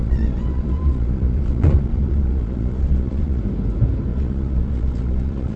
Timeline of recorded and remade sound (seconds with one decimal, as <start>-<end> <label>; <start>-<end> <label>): 0.0-3.4 remade; 3.4-4.1 recorded; 4.1-5.6 remade